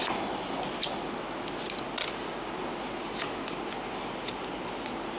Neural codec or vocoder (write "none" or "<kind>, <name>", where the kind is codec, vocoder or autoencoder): none